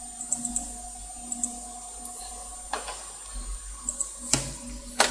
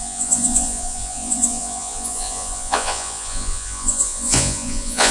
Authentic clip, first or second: first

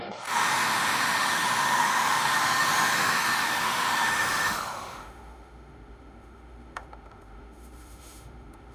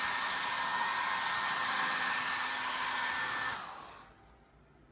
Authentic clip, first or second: second